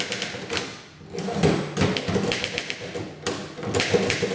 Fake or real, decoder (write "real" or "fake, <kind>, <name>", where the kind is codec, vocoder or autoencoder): real